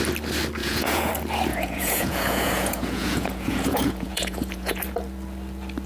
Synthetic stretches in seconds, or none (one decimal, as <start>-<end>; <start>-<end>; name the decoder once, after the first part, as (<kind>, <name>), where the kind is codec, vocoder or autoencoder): 0.6-1.1 (vocoder, Vocos); 1.5-4.8